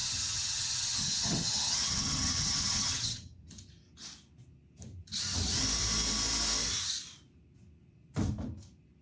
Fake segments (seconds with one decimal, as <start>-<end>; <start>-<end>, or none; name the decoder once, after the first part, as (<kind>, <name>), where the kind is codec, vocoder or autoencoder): 0.0-3.5 (vocoder, HiFi-GAN)